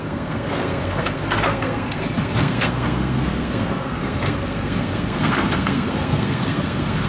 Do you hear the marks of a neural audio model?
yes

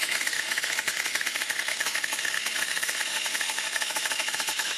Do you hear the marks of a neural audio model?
yes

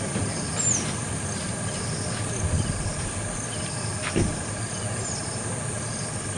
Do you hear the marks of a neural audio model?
no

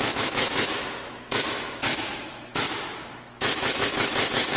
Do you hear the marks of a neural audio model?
yes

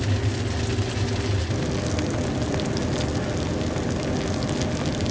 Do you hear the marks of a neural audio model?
no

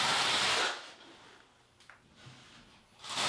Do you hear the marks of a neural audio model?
no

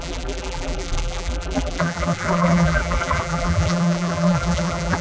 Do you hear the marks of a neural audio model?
yes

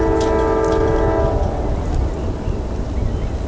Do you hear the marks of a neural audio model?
no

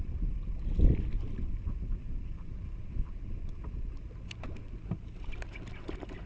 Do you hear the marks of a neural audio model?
no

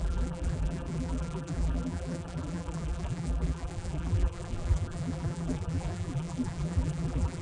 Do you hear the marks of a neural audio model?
yes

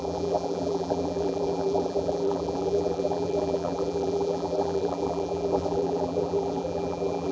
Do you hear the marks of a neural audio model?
yes